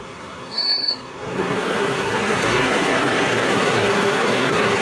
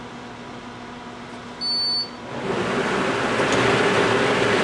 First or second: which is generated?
first